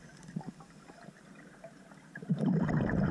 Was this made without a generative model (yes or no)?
yes